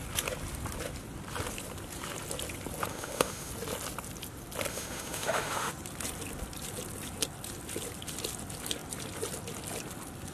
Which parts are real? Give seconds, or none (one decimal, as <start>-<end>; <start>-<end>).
0.0-2.9; 3.5-4.7; 5.7-10.3